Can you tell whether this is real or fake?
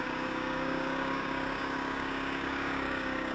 fake